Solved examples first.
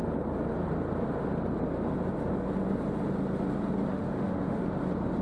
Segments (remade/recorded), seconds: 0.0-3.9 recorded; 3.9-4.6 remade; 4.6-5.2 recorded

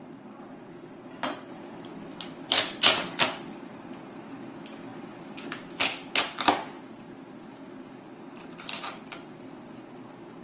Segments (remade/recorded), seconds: 0.0-10.4 recorded

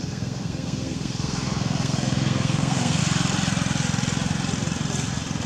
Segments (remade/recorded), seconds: 0.0-3.0 remade; 3.0-5.5 recorded